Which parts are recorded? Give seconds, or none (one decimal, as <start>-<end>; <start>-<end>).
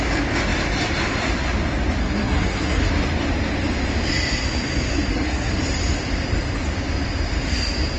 0.0-2.0; 2.9-5.1; 5.6-8.0